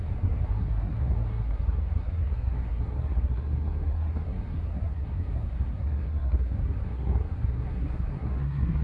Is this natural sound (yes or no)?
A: no